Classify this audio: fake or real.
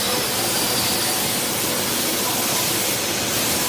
real